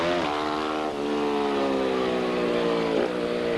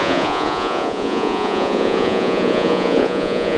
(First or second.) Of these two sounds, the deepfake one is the second